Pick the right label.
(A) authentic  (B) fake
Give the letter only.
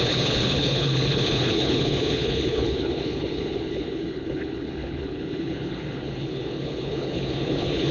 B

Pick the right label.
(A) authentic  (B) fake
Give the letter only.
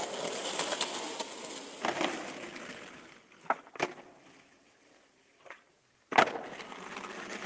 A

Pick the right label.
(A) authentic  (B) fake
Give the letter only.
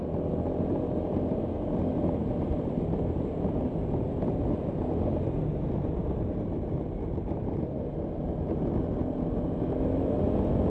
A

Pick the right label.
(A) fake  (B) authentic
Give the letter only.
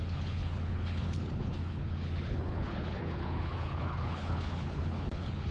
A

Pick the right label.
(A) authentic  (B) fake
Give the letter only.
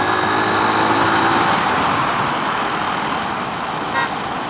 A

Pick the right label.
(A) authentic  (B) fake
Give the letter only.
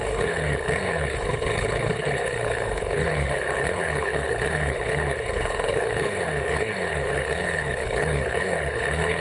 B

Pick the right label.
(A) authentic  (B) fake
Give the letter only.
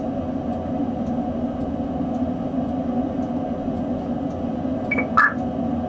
A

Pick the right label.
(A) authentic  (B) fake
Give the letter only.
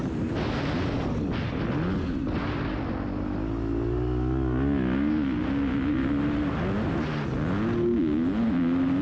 A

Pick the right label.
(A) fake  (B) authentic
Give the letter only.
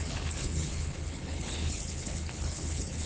A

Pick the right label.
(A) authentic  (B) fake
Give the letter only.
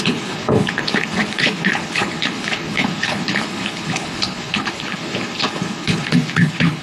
B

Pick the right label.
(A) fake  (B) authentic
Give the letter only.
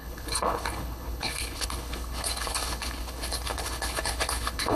A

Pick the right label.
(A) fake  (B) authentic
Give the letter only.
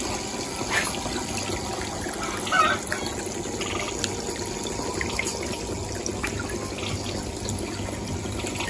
B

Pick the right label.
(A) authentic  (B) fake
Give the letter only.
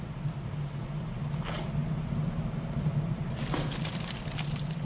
A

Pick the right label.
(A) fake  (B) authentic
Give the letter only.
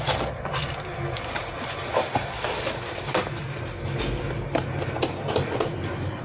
B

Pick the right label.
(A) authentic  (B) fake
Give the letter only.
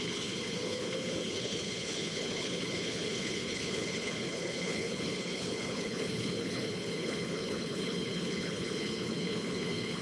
B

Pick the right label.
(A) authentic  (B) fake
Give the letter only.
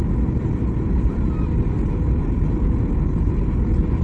A